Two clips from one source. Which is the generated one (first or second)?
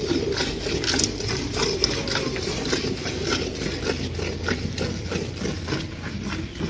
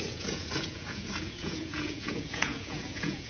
second